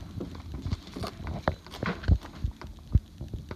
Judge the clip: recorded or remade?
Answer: recorded